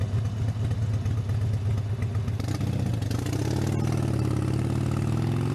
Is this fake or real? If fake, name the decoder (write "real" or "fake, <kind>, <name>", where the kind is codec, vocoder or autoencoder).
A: real